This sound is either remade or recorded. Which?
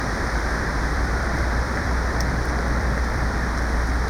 remade